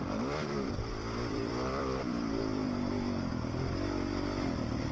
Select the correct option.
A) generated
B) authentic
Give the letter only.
A